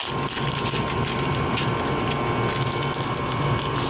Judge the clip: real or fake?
real